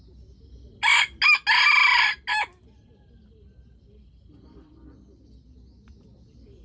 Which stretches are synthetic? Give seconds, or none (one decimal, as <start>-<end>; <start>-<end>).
none